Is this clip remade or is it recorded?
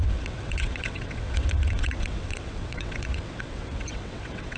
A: remade